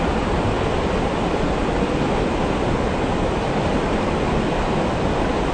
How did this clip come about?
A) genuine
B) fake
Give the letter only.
A